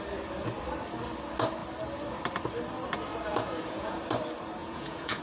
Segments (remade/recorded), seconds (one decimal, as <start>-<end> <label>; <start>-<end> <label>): 0.0-3.3 recorded; 3.3-4.0 remade; 4.0-4.6 recorded; 4.6-5.2 remade